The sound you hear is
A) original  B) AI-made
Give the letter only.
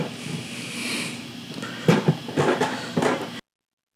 A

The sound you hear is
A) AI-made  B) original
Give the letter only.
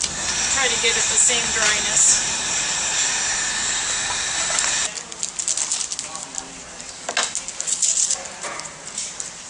B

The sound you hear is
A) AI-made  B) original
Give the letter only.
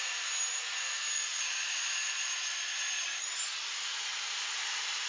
A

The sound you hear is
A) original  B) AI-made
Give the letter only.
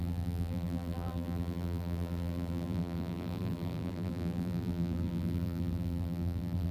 B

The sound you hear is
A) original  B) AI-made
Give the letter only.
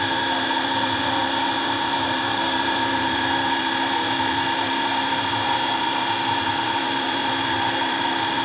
B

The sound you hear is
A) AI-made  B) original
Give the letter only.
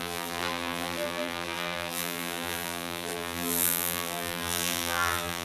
A